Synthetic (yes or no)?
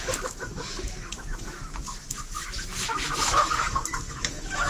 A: yes